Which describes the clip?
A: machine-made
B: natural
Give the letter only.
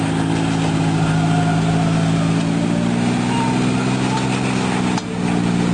B